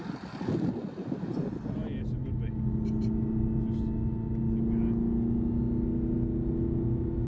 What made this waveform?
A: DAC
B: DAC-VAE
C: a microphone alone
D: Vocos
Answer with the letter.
C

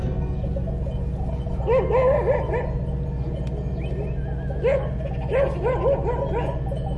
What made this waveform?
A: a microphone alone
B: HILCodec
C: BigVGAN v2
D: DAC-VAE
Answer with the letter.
A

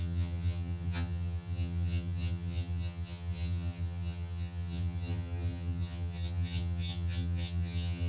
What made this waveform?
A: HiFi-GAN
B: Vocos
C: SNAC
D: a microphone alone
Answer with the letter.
A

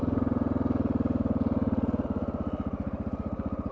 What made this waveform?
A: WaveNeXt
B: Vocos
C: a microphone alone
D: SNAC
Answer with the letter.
C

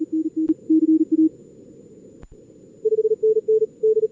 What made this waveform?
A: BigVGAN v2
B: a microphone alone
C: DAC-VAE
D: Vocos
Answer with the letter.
B